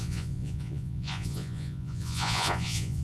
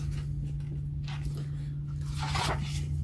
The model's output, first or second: first